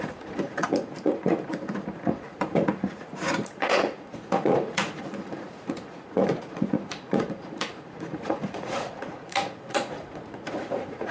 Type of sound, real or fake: fake